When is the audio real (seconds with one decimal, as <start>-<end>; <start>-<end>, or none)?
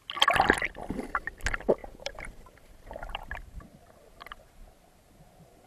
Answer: 0.0-1.8; 3.4-5.7